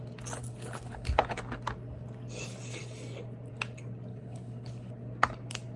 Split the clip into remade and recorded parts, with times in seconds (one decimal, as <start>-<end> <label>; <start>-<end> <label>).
0.0-0.4 recorded; 0.4-1.4 remade; 1.4-4.1 recorded; 4.1-4.9 remade; 4.9-5.8 recorded